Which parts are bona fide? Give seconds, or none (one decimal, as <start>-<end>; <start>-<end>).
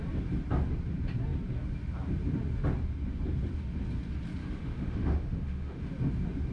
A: 0.0-4.4; 5.8-6.5